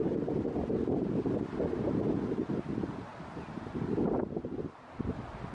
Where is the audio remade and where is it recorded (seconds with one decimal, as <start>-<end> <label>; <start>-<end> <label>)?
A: 0.0-5.5 recorded